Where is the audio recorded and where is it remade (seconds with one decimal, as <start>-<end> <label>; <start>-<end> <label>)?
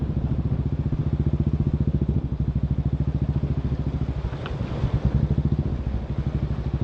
0.0-6.8 recorded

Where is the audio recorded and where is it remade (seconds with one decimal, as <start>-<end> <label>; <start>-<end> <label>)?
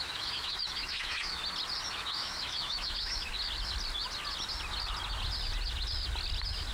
0.0-1.4 remade; 1.4-1.9 recorded; 1.9-3.3 remade; 3.3-6.7 recorded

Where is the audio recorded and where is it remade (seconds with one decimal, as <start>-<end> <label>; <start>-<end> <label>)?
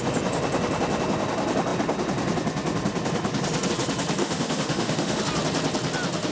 0.0-4.2 recorded; 4.2-5.2 remade; 5.2-6.3 recorded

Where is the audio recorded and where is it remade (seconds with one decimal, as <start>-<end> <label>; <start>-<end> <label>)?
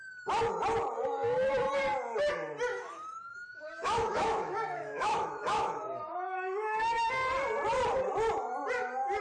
0.0-2.7 recorded; 2.7-7.1 remade; 7.1-9.2 recorded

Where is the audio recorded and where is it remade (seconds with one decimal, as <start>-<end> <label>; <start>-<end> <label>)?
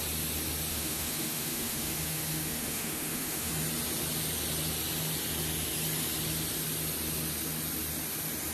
0.0-0.7 recorded; 0.7-3.5 remade; 3.5-8.5 recorded